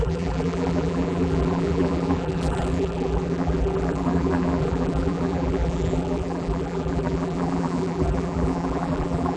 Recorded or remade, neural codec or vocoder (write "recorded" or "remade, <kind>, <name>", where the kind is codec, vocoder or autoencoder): remade, vocoder, BigVGAN v2